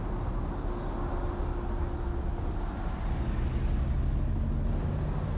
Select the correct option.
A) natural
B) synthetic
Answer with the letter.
A